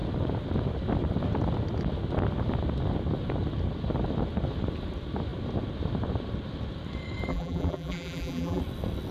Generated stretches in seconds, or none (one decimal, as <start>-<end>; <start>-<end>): 7.3-8.6